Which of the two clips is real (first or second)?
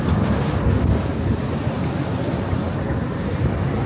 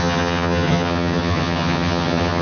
first